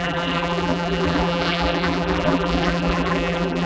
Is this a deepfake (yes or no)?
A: yes